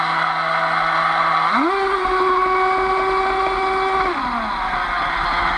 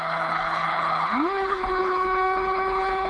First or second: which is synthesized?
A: second